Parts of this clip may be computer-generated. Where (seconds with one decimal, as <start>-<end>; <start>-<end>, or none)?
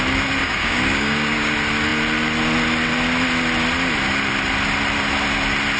0.4-1.5